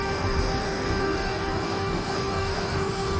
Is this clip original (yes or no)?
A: no